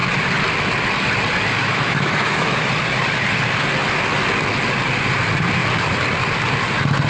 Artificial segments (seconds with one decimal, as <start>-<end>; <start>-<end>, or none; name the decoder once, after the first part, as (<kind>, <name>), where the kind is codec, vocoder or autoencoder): 1.6-2.7 (autoencoder, DAC-VAE)